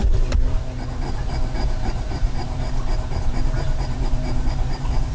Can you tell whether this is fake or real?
fake